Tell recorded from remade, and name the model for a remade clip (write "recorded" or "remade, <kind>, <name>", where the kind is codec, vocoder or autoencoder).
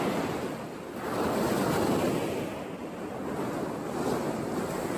recorded